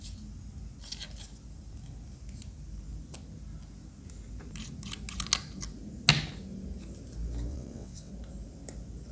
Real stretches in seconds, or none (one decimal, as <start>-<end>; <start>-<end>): 0.0-7.5; 8.1-9.1